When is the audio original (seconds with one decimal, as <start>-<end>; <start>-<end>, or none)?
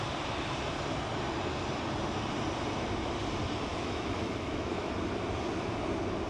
0.0-3.7; 4.9-6.3